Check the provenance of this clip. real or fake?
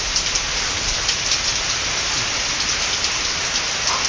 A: real